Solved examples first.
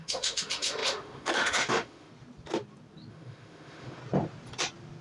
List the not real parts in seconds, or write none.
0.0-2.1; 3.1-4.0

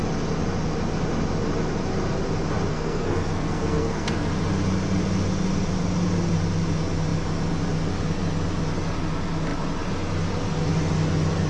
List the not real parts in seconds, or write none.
2.7-4.3

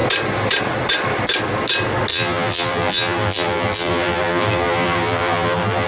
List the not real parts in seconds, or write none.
2.1-5.9

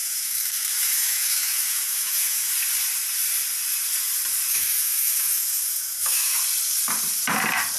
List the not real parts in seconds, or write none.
0.0-2.5; 4.5-6.4

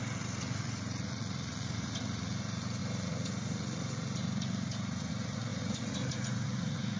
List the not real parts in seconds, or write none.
0.0-7.0